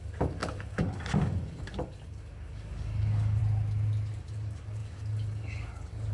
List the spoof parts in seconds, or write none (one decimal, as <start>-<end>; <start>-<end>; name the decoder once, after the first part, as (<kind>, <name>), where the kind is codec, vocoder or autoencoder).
0.0-3.4 (codec, DAC); 4.2-6.1

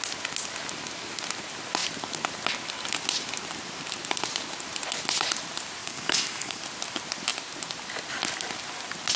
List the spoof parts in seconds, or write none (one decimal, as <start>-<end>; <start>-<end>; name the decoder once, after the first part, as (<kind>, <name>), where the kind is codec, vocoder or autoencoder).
5.8-6.6 (codec, DAC)

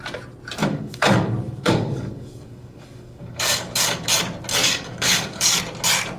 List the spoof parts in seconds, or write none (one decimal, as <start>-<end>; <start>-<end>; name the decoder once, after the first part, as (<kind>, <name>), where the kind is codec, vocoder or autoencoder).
0.6-4.1 (codec, DAC); 4.6-5.6

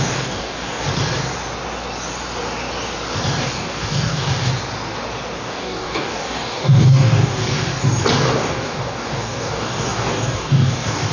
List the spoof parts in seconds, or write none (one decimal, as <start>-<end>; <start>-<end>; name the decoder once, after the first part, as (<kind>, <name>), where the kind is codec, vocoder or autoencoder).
0.0-0.9 (codec, DAC); 3.5-4.5; 5.4-7.7; 8.3-11.1

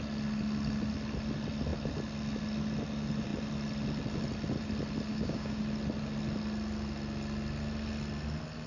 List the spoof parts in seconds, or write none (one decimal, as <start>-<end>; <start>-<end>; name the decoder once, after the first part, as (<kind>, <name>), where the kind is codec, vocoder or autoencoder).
5.1-5.6 (codec, DAC)

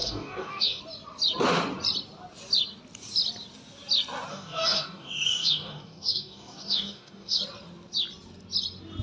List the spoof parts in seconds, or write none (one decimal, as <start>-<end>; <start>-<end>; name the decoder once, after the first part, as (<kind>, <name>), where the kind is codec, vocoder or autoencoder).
0.0-0.8 (codec, DAC); 4.3-7.4